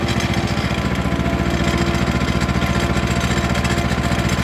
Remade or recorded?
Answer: recorded